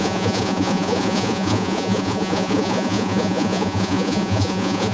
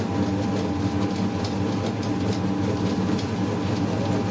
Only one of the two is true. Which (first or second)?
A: second